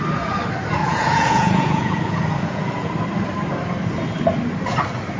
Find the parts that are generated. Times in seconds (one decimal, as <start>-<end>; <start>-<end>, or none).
0.8-2.9